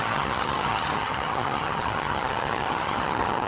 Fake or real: fake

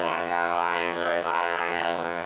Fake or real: fake